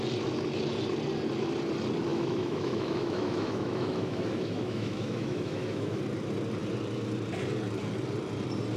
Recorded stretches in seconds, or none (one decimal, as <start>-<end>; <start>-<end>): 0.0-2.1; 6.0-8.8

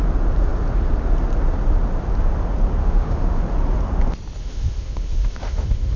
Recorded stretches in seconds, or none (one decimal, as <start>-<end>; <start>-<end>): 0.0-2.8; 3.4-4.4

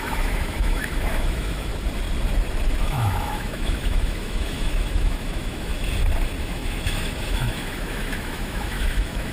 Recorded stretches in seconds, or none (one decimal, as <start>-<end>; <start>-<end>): 1.7-2.8; 5.7-6.4

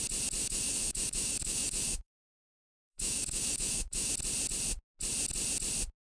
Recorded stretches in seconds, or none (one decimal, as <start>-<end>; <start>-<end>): 0.0-0.4; 4.1-6.1

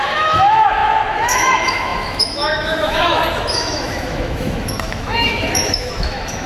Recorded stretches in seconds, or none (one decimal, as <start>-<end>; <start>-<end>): none

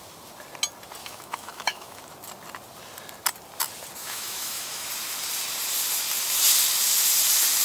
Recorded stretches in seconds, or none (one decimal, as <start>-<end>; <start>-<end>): 0.0-1.0; 2.0-4.0; 4.9-7.6

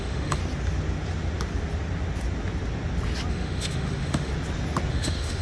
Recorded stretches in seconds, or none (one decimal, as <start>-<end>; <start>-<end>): 0.4-3.3; 4.3-4.9